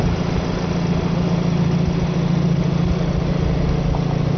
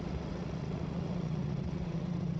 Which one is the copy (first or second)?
second